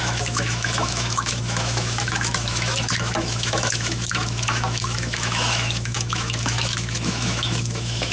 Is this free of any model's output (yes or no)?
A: no